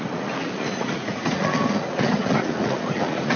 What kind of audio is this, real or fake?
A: fake